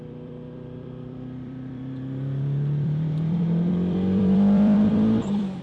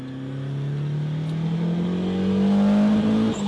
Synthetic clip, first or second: first